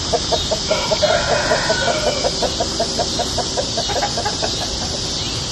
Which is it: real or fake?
real